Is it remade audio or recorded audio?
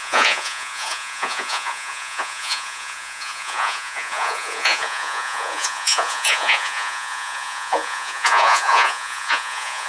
remade